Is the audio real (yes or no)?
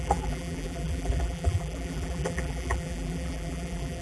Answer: no